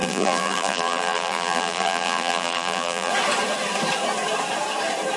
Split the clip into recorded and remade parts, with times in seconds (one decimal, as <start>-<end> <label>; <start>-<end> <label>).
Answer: 0.0-3.1 remade; 3.1-5.2 recorded